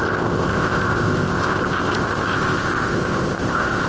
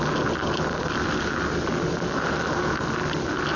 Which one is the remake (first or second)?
first